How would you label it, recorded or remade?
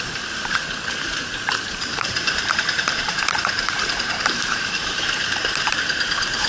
remade